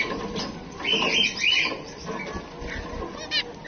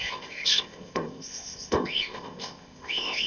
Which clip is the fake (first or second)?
second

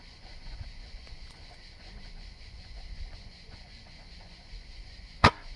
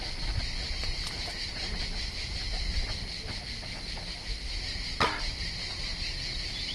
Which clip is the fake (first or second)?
first